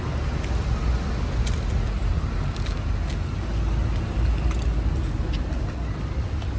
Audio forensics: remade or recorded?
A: recorded